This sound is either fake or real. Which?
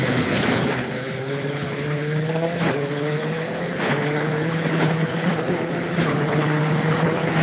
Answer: fake